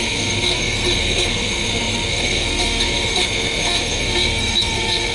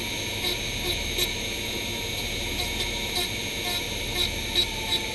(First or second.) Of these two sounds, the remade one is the first